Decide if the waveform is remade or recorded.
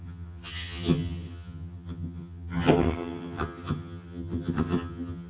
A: remade